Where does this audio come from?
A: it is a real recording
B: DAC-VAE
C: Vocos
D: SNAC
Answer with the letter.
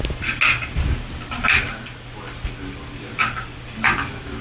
A